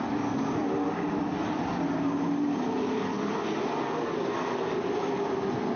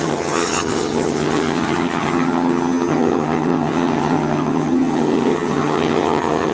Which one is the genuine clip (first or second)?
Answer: first